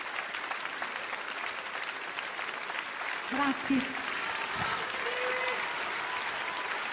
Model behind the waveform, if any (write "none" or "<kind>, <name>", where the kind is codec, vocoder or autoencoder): none